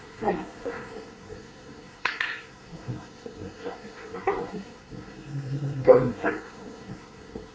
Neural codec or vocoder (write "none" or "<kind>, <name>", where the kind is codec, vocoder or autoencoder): codec, SNAC